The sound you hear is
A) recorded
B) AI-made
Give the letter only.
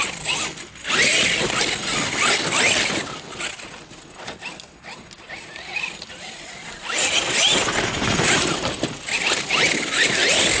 A